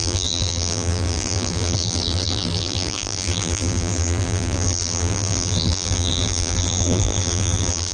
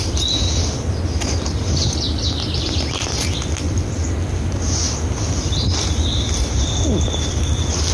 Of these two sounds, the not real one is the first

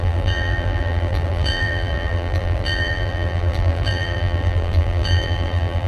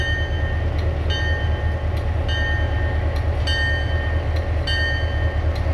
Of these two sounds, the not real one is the first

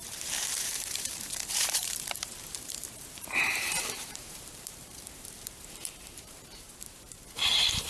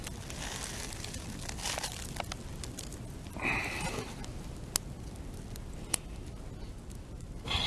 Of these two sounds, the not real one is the first